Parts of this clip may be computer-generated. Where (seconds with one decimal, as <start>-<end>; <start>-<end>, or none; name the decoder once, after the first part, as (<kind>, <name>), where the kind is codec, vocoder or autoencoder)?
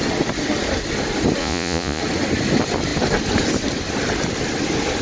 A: 1.4-2.0 (vocoder, Vocos)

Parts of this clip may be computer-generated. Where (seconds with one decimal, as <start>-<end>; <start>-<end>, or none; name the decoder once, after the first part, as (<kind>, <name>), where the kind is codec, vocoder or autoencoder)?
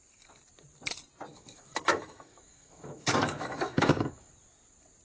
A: 1.3-4.3 (autoencoder, DAC-VAE)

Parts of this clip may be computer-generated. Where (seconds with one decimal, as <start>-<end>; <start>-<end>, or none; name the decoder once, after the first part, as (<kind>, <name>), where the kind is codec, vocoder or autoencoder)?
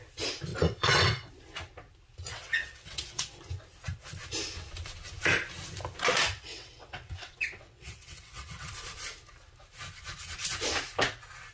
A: 0.5-1.3 (vocoder, WaveNeXt); 2.3-3.4; 6.2-8.7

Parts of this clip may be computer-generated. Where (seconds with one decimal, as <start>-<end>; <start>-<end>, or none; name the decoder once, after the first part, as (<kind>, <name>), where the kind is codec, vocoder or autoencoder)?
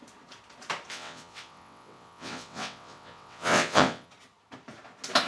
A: 0.9-4.1 (vocoder, WaveNeXt)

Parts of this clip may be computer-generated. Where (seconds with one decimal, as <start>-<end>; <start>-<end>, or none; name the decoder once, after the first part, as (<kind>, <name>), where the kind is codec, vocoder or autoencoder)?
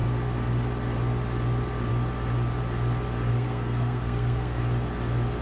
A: 3.3-4.6 (codec, SNAC)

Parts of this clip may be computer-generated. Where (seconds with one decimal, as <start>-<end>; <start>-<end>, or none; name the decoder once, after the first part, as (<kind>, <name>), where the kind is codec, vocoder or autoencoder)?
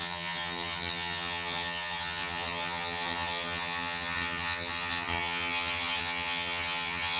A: 0.0-7.2 (vocoder, HiFi-GAN)